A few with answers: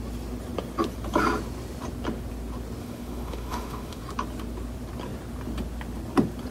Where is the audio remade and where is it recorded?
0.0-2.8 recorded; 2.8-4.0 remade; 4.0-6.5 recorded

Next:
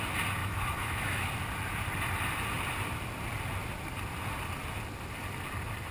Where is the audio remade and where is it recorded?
0.0-0.4 recorded; 0.4-1.3 remade; 1.3-5.9 recorded

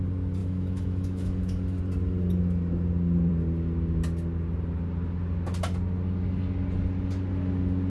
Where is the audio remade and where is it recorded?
0.0-0.4 recorded; 0.4-1.8 remade; 1.8-7.9 recorded

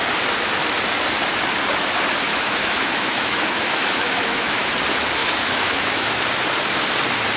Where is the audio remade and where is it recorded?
0.0-2.3 recorded; 2.3-4.7 remade; 4.7-5.2 recorded; 5.2-6.2 remade; 6.2-7.4 recorded

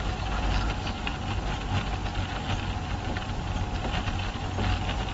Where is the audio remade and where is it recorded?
0.0-5.1 recorded

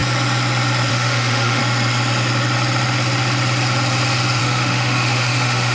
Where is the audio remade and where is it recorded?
0.0-0.9 recorded; 0.9-1.6 remade; 1.6-4.4 recorded; 4.4-5.7 remade

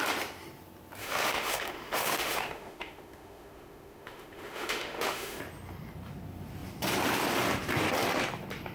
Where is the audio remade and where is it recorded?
0.0-1.0 recorded; 1.0-5.4 remade; 5.4-8.7 recorded

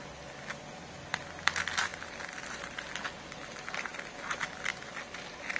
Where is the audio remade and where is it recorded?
0.0-5.6 recorded